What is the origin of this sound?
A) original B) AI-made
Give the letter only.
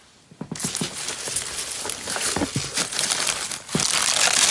A